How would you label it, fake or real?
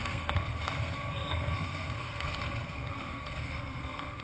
fake